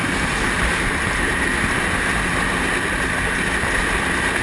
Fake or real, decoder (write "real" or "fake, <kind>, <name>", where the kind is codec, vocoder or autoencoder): real